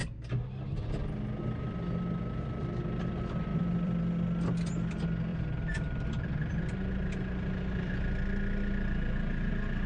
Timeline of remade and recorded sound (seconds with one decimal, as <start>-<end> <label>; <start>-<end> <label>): 0.0-3.5 recorded; 3.5-4.0 remade; 4.0-5.3 recorded; 5.3-9.5 remade; 9.5-9.9 recorded